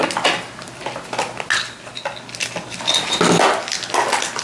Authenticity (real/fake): real